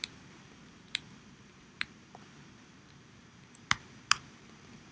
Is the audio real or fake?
fake